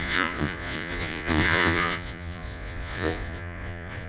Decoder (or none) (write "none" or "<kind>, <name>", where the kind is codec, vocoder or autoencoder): vocoder, Vocos